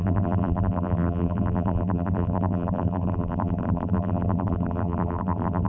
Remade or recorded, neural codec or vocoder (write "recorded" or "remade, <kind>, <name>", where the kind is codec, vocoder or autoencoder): remade, vocoder, BigVGAN v2